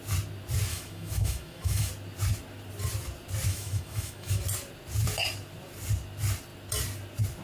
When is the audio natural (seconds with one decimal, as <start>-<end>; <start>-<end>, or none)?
0.0-0.7; 1.9-3.5; 4.4-7.4